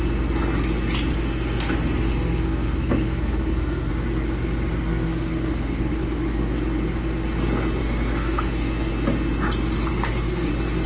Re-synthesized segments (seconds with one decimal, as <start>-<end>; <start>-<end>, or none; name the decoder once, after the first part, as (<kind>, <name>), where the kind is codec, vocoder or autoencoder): 1.1-3.9 (codec, SNAC); 4.9-6.5; 7.8-8.9; 9.9-10.5